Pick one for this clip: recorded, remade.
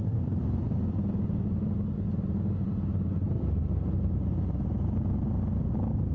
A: recorded